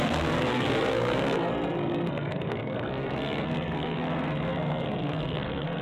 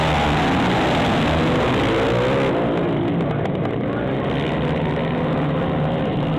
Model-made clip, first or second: first